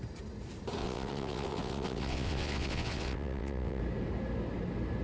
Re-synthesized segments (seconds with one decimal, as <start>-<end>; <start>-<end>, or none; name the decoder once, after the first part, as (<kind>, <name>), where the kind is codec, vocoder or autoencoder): 0.8-3.8 (vocoder, WaveNeXt)